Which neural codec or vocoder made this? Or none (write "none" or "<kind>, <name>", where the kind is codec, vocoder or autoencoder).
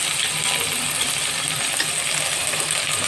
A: none